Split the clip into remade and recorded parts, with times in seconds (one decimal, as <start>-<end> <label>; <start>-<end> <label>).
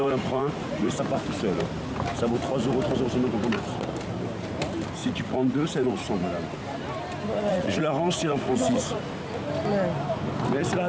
0.0-1.0 remade; 1.0-5.0 recorded; 5.0-6.0 remade; 6.0-7.5 recorded; 7.5-9.0 remade; 9.0-10.9 recorded